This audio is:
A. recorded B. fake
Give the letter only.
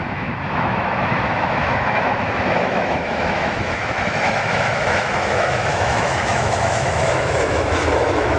B